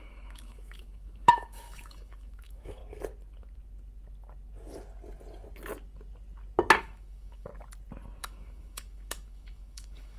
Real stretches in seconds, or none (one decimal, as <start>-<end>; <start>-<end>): 2.8-6.8; 7.5-8.2